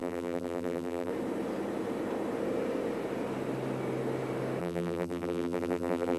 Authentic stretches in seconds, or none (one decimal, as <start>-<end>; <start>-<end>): 1.1-4.6